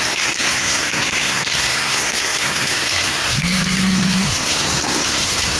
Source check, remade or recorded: remade